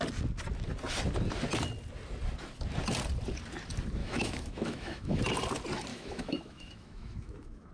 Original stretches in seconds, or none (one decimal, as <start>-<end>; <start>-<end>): 0.0-4.0; 5.2-5.9